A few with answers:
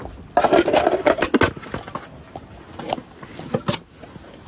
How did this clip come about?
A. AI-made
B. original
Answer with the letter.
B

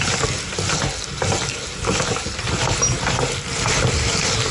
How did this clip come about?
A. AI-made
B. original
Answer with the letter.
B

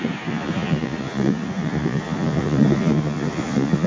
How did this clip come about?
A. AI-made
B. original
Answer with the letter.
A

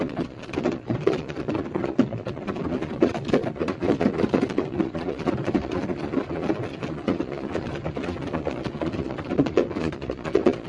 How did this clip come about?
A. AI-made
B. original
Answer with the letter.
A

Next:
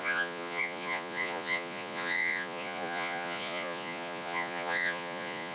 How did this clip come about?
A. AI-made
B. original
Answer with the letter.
A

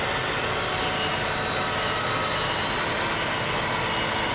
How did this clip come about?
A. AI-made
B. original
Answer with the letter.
B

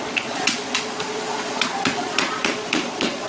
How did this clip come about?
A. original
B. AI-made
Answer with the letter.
B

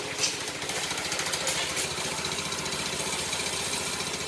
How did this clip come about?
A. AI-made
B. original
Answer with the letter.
B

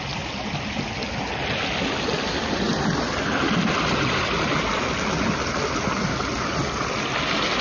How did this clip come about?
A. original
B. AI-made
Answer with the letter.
A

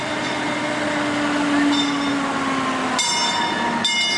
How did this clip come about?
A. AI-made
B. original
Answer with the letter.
B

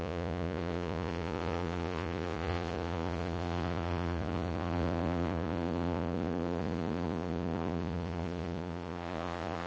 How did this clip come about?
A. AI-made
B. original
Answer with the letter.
A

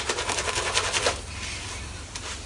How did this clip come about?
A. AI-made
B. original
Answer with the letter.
B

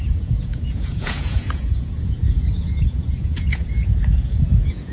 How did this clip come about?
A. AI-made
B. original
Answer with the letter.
A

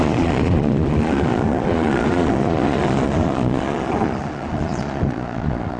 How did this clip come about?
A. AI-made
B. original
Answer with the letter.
A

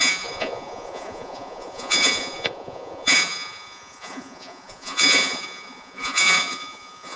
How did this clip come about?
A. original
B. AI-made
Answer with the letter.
B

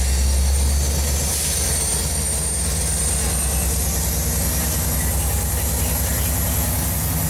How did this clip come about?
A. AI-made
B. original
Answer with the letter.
B